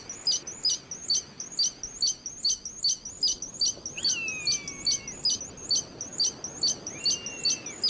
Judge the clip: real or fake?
real